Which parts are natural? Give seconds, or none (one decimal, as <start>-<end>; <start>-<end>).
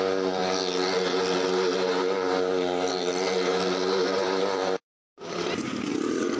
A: 0.4-2.9